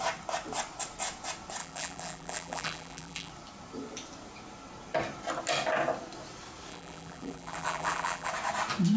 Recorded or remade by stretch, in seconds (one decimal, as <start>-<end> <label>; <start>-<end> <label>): 0.0-1.6 recorded; 1.6-3.3 remade; 3.3-6.7 recorded; 6.7-8.3 remade; 8.3-9.0 recorded